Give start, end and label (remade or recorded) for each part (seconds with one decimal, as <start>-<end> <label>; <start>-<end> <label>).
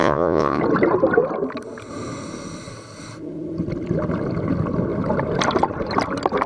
0.0-0.6 remade; 0.6-6.5 recorded